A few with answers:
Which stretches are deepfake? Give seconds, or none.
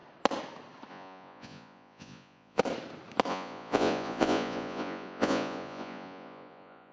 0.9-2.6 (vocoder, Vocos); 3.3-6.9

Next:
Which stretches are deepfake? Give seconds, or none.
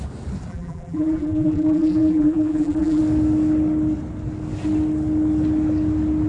0.5-3.0 (vocoder, BigVGAN v2)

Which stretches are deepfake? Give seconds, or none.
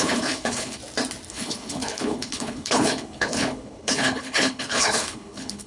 0.0-0.8 (codec, HILCodec); 1.3-5.7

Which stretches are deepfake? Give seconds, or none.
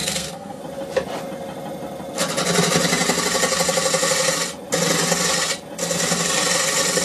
0.0-0.6 (codec, SNAC)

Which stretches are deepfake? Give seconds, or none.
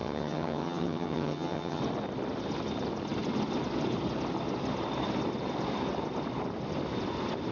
0.0-1.8 (vocoder, HiFi-GAN)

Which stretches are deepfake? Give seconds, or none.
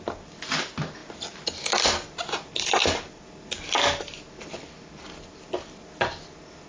none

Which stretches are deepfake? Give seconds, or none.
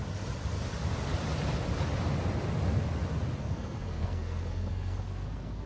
3.4-5.7 (codec, SNAC)